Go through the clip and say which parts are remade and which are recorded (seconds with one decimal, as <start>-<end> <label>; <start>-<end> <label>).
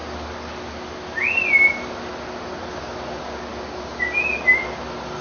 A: 0.0-5.2 recorded